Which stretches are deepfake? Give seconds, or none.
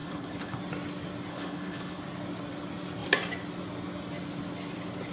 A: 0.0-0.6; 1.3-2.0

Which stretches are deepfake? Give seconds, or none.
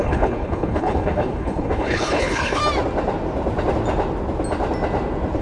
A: 0.0-2.6